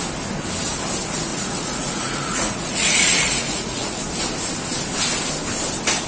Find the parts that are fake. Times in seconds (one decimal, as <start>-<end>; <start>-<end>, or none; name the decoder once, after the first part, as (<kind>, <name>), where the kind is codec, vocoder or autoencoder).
1.3-4.0 (vocoder, Vocos)